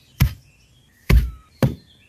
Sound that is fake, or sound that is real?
real